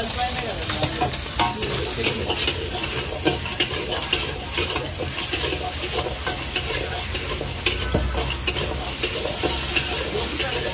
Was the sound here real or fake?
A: real